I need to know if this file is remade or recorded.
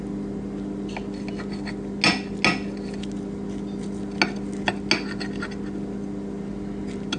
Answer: recorded